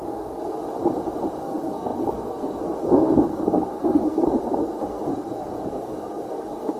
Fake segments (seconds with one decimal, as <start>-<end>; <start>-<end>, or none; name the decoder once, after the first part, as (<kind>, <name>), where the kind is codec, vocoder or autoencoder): 0.0-0.6 (codec, SNAC); 1.4-6.8